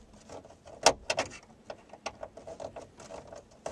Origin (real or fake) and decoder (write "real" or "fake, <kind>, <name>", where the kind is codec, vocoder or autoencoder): real